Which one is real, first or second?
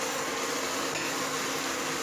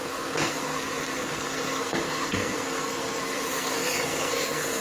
first